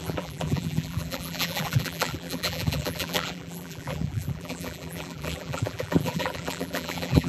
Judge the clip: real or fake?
fake